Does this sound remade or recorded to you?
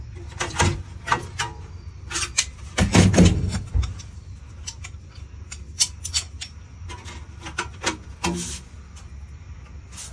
recorded